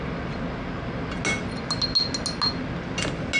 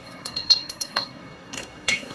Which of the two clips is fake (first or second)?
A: second